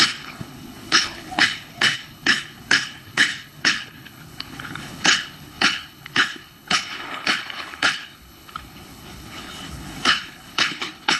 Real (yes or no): no